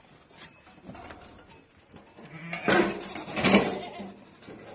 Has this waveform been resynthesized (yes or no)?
no